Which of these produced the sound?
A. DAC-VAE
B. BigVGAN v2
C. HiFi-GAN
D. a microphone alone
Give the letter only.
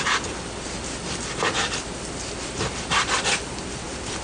B